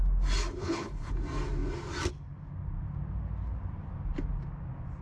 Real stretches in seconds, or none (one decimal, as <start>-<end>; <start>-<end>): 0.0-0.6; 1.1-5.0